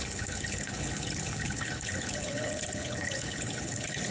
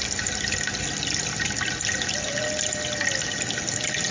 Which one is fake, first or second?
first